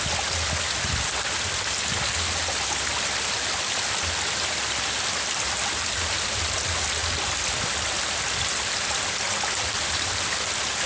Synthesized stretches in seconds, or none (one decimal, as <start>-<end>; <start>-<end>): none